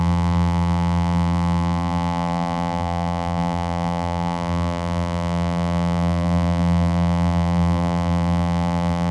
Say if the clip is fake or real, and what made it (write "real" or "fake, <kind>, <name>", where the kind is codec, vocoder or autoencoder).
fake, vocoder, BigVGAN v2